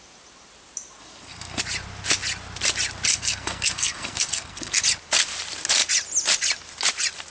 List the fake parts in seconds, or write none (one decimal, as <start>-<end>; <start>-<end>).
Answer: 1.0-1.6; 3.1-4.8